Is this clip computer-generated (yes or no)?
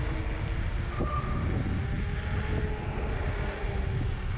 no